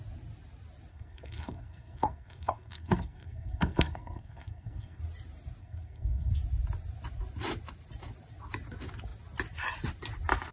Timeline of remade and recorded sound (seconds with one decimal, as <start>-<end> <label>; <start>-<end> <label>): 0.0-0.9 recorded; 0.9-5.0 remade; 5.0-5.6 recorded; 5.6-6.3 remade; 6.3-10.5 recorded